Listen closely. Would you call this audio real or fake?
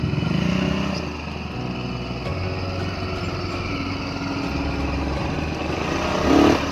real